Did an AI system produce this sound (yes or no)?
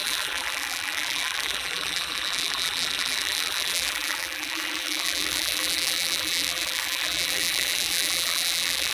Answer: yes